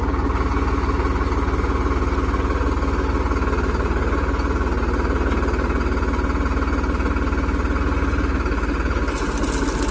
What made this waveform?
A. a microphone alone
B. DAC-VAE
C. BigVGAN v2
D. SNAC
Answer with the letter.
A